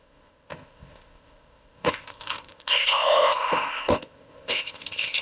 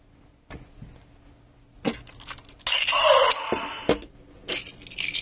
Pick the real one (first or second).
second